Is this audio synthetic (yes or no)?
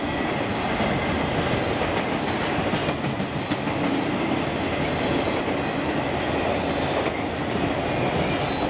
no